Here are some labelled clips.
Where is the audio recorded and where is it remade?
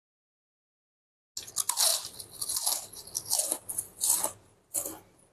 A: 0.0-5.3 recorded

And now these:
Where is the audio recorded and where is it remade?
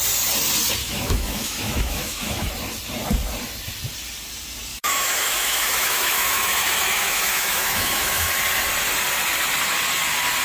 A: 0.0-0.8 recorded; 0.8-2.5 remade; 2.5-4.7 recorded; 4.7-8.3 remade; 8.3-10.4 recorded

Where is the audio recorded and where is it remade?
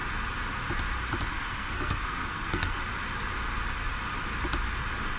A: 0.0-1.3 recorded; 1.3-2.8 remade; 2.8-5.2 recorded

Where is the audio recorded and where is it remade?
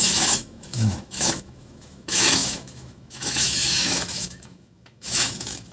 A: 0.0-5.7 remade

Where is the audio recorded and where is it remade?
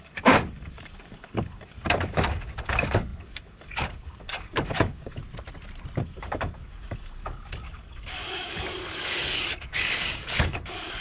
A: 0.0-5.2 remade; 5.2-6.0 recorded; 6.0-11.0 remade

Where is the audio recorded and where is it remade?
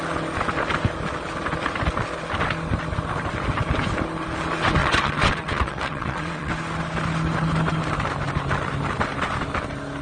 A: 0.0-4.8 recorded; 4.8-6.5 remade; 6.5-10.0 recorded